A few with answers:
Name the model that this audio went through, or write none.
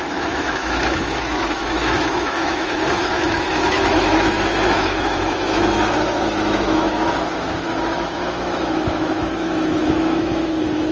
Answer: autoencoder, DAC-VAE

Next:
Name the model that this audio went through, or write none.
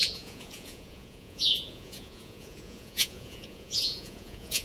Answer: vocoder, Vocos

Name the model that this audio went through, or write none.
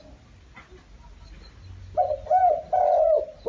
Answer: none